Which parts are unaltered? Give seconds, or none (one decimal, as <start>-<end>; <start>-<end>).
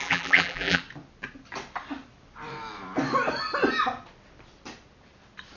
0.8-5.6